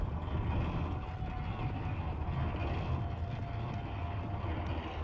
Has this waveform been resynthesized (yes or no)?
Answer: no